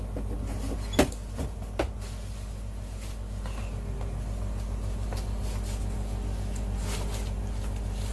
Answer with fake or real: real